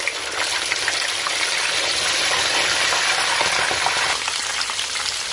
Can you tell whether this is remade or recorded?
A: recorded